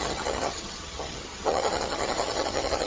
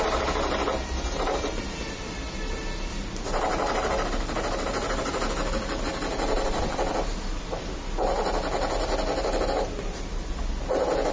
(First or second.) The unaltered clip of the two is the second